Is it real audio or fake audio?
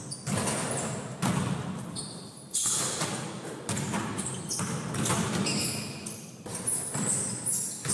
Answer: real